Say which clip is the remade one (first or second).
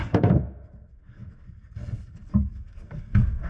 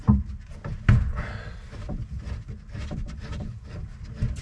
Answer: first